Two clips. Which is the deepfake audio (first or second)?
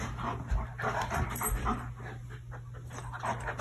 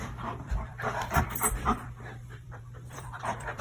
second